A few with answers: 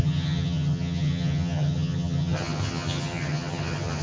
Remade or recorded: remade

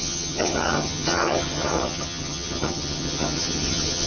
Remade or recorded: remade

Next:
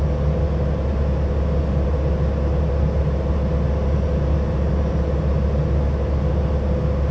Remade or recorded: recorded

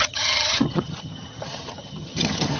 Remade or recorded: remade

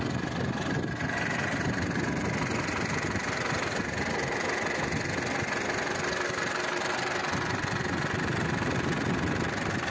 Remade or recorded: recorded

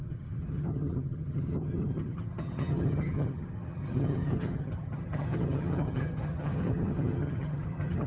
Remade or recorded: remade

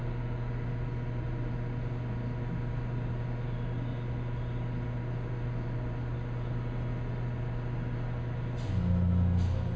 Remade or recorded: recorded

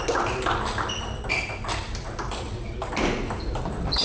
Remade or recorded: recorded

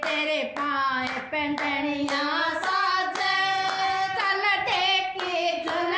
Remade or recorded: recorded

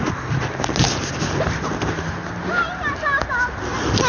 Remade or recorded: recorded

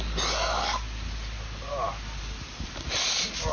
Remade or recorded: recorded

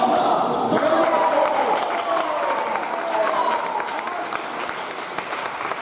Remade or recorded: recorded